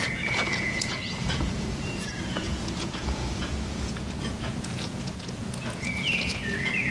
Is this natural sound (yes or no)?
no